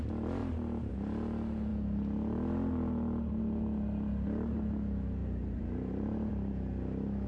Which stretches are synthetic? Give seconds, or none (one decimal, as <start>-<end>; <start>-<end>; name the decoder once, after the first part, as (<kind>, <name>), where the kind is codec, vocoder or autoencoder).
0.4-0.9 (vocoder, BigVGAN v2); 5.2-6.3